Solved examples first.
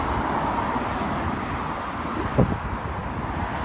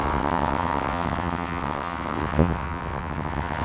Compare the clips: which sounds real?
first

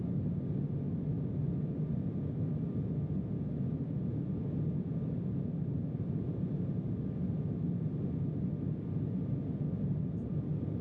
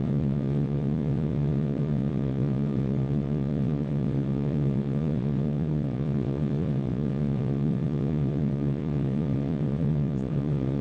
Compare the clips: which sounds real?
first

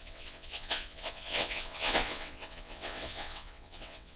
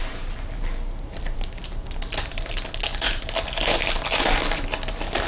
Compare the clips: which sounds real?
second